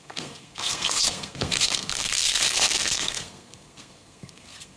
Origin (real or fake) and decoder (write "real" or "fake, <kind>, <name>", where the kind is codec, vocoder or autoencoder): fake, codec, SNAC